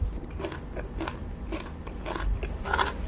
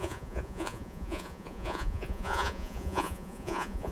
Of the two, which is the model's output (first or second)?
second